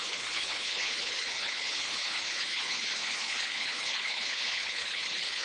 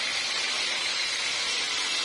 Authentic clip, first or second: second